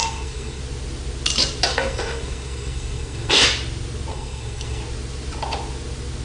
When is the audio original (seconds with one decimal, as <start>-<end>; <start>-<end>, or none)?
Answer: 0.6-1.7; 3.4-4.1; 4.8-6.2